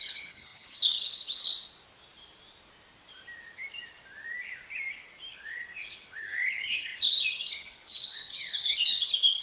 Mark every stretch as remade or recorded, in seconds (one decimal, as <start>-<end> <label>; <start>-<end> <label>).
0.0-1.5 remade; 1.5-5.3 recorded; 5.3-9.4 remade